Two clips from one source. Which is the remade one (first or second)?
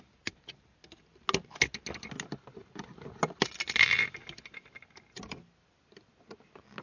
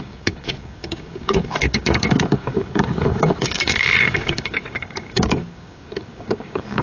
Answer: second